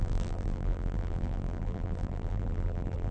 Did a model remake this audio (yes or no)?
yes